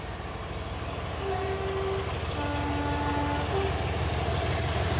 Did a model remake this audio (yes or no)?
no